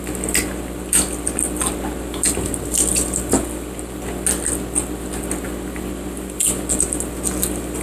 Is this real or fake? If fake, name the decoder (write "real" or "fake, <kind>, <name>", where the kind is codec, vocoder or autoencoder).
real